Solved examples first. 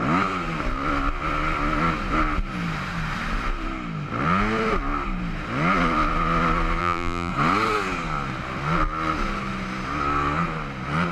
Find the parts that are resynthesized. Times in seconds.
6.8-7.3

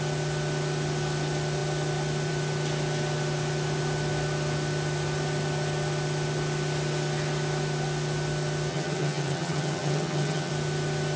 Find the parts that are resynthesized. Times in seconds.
8.7-10.5

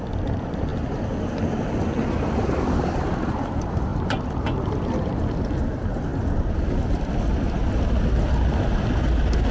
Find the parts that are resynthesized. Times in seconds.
none

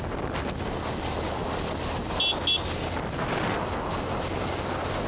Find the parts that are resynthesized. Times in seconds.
none

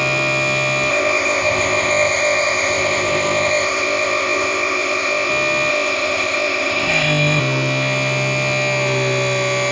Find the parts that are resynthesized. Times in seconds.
0.9-5.3; 5.7-7.4

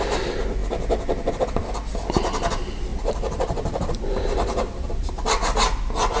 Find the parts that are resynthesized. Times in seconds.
2.9-5.1

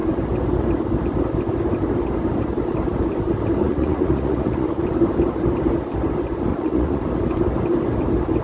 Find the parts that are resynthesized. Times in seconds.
3.6-4.8; 6.5-7.0

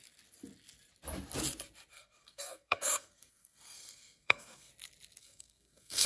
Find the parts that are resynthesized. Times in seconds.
1.9-4.7; 5.2-6.1